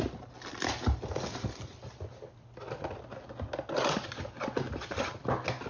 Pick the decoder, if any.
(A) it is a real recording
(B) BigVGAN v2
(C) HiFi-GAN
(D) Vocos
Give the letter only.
A